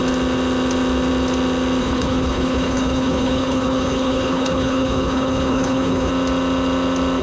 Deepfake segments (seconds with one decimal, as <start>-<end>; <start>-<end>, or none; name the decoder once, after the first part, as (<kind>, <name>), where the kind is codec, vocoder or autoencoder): 1.8-6.1 (codec, HILCodec)